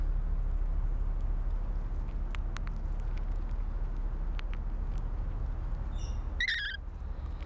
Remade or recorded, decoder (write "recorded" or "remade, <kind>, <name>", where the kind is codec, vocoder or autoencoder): recorded